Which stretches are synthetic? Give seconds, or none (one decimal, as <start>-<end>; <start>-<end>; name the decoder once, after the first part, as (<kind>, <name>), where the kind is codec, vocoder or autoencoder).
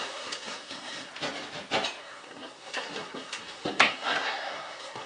0.0-1.1 (codec, SNAC); 2.0-5.1